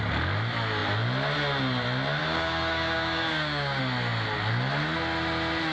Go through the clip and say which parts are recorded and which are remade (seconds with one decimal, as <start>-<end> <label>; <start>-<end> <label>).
0.0-2.2 recorded; 2.2-3.8 remade; 3.8-5.7 recorded